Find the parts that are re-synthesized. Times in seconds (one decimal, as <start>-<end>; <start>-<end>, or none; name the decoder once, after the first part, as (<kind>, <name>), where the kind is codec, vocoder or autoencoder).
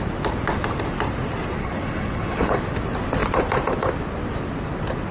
1.6-2.6 (codec, HILCodec)